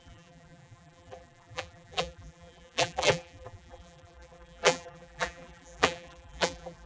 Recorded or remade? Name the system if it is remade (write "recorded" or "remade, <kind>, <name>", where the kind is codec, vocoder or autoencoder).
remade, vocoder, BigVGAN v2